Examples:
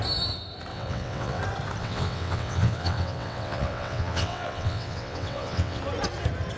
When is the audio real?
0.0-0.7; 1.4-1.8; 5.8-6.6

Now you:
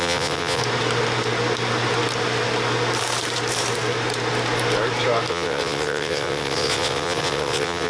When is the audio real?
0.6-5.3

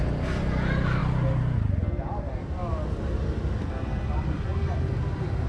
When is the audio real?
0.0-5.5

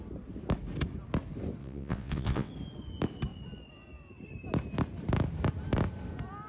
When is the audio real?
0.0-1.6; 2.5-6.5

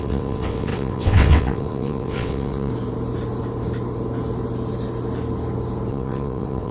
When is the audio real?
2.7-5.9

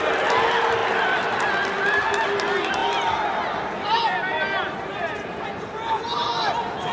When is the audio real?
0.0-6.9

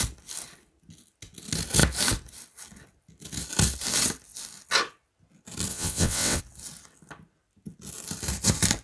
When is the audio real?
0.0-5.7; 6.4-8.8

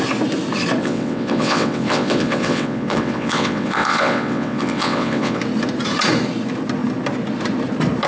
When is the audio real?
0.0-0.8; 5.4-8.1